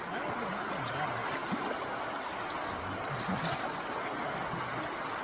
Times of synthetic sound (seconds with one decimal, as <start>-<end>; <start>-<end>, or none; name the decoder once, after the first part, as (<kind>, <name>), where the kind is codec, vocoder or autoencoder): none